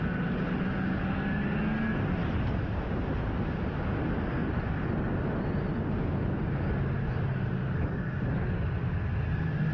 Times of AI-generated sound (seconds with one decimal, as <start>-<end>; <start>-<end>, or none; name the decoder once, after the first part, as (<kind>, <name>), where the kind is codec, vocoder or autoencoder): none